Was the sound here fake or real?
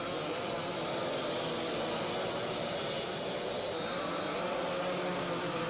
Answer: real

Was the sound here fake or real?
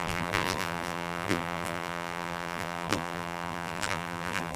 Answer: fake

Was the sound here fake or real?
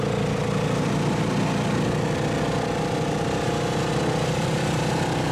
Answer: real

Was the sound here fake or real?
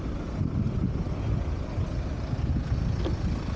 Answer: real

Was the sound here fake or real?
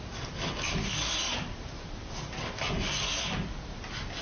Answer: real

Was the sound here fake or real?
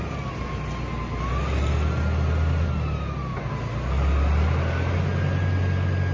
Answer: real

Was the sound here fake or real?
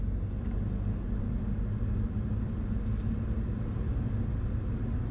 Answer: real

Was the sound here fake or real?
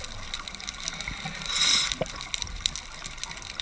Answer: real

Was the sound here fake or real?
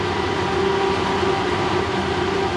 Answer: real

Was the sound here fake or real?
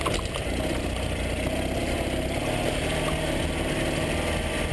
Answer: real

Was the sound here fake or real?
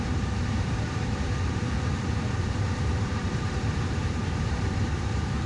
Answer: fake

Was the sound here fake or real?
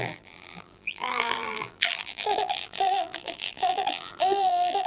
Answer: fake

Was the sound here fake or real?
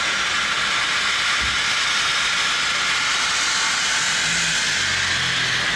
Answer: real